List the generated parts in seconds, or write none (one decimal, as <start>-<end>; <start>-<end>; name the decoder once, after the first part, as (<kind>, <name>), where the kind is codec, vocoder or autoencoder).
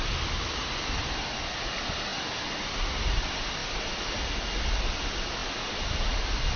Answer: none